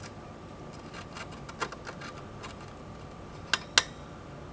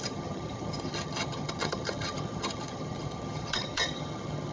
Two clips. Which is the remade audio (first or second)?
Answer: second